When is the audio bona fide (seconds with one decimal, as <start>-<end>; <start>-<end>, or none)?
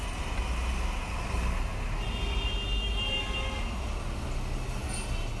0.0-5.4